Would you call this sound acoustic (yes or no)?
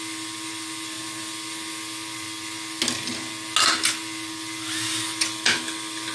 yes